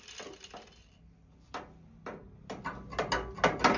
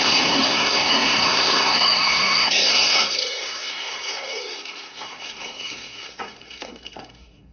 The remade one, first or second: second